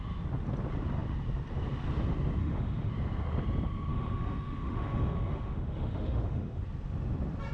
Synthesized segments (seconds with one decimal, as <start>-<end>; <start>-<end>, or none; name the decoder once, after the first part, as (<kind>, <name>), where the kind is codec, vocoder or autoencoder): 2.4-2.9 (autoencoder, DAC-VAE); 3.9-6.6